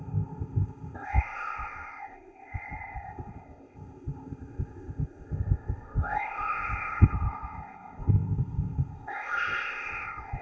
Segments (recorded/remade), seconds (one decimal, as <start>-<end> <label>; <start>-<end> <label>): 0.0-10.4 remade